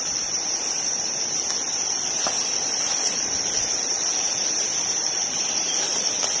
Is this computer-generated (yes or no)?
yes